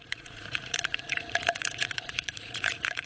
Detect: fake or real fake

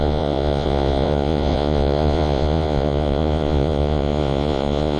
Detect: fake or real fake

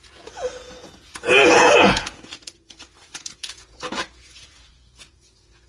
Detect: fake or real fake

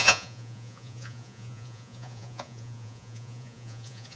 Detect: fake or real fake